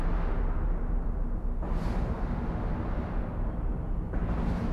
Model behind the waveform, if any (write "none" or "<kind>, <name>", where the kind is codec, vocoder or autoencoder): none